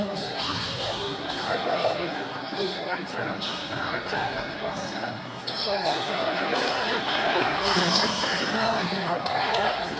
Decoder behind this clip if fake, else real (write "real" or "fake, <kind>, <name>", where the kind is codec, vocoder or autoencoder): fake, codec, SNAC